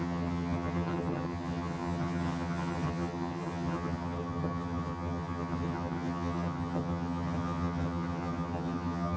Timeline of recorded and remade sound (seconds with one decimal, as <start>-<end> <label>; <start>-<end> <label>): 0.0-9.2 remade